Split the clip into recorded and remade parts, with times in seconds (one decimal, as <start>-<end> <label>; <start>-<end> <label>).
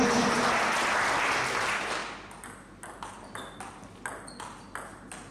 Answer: 0.0-5.3 recorded